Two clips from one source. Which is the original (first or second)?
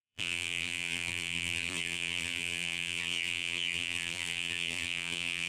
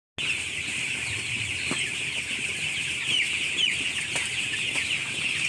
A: second